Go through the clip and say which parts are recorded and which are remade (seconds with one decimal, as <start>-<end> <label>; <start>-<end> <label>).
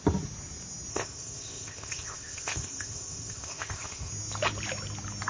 0.0-0.9 recorded; 0.9-4.1 remade; 4.1-5.3 recorded